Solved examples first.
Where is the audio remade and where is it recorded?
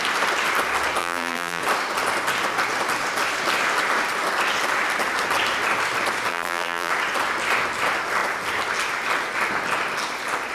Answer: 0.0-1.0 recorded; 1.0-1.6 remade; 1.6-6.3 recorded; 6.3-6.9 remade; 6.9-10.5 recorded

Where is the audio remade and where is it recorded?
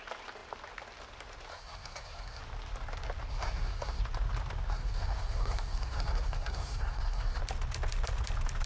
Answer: 0.0-1.5 recorded; 1.5-2.4 remade; 2.4-3.3 recorded; 3.3-4.0 remade; 4.0-4.7 recorded; 4.7-7.4 remade; 7.4-8.7 recorded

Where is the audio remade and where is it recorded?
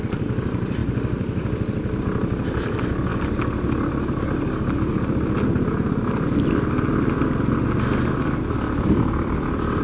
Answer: 0.0-3.1 remade; 3.1-8.1 recorded; 8.1-9.8 remade